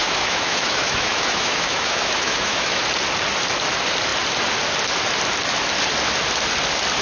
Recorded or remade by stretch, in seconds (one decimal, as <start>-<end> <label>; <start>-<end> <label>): 0.0-2.8 remade; 2.8-7.0 recorded